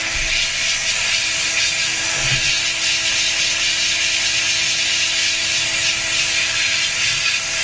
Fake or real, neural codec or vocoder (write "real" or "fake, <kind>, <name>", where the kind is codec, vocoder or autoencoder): real